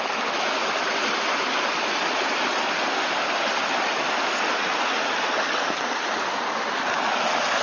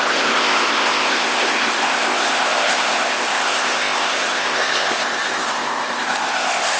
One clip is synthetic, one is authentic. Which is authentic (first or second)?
first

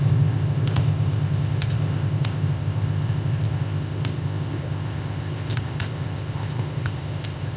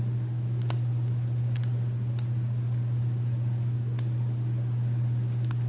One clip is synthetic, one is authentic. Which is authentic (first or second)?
second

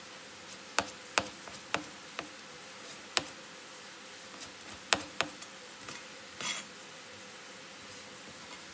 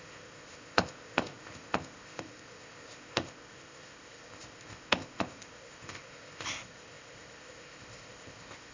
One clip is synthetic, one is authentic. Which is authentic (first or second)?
first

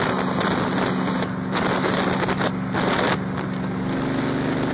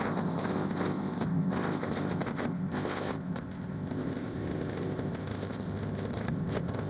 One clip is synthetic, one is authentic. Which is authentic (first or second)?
first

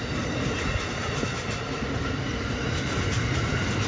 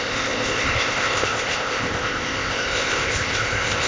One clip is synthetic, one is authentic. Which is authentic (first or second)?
first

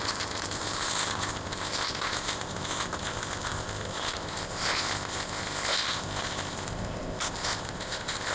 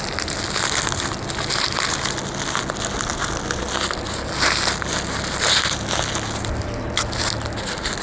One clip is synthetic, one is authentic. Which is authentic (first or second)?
second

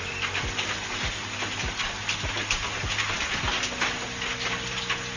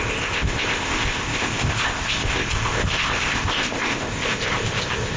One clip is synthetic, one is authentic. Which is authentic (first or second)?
first